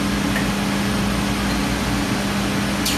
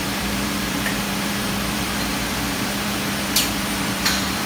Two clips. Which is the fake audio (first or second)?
second